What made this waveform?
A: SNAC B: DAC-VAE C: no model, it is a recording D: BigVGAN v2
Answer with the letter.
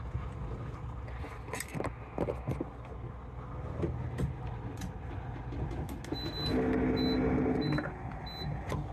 C